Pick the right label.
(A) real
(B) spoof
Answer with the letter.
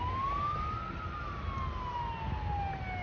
A